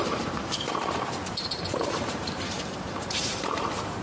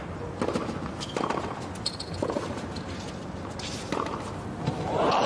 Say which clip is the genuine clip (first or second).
second